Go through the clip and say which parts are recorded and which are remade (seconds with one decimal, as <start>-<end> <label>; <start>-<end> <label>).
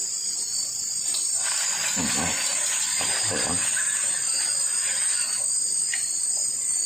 0.0-1.7 remade; 1.7-2.5 recorded; 2.5-3.8 remade; 3.8-6.9 recorded